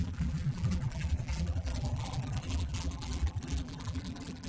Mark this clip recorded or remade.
remade